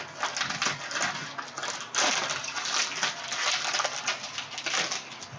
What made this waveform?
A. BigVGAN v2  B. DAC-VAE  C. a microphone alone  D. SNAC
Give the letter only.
C